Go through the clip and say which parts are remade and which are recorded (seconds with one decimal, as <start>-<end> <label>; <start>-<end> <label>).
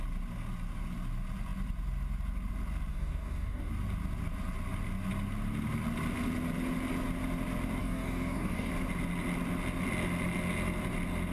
0.0-2.9 recorded; 2.9-3.7 remade; 3.7-7.8 recorded; 7.8-8.7 remade; 8.7-11.3 recorded